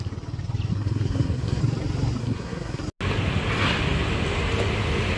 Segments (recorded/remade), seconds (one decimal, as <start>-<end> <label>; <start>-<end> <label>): 0.0-0.7 recorded; 0.7-1.6 remade; 1.6-2.2 recorded; 2.2-2.8 remade; 2.8-5.2 recorded